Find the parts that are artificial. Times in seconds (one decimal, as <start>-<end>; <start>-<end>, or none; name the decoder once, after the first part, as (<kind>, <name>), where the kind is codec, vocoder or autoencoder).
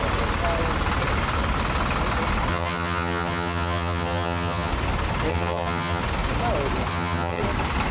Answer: 2.5-4.7 (vocoder, HiFi-GAN); 5.3-6.0; 6.9-7.4